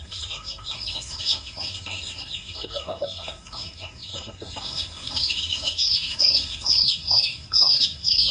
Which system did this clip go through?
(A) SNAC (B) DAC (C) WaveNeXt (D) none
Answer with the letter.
A